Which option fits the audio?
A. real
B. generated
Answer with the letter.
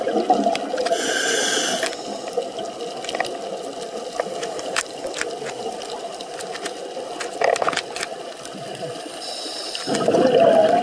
A